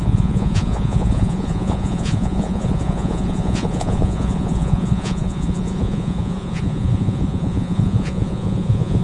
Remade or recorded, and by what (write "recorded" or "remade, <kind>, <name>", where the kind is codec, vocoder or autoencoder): remade, vocoder, Vocos